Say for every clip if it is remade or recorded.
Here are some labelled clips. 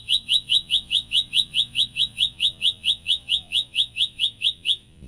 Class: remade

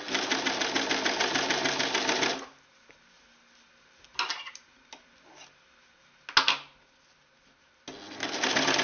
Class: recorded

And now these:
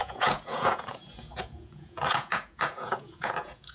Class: remade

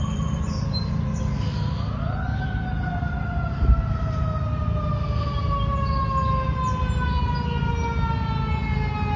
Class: recorded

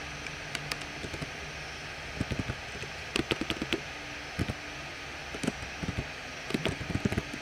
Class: recorded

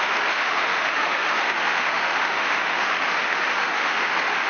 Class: remade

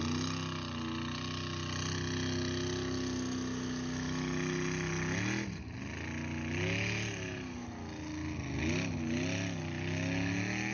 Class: recorded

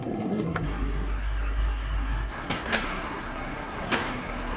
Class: remade